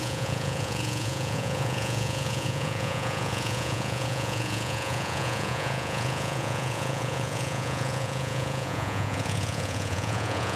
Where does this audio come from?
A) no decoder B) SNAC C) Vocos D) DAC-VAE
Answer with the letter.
C